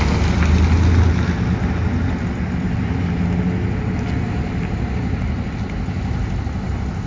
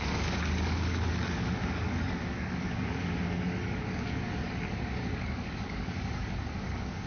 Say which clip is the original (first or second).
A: first